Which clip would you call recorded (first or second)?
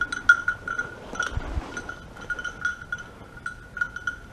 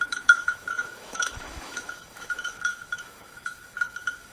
first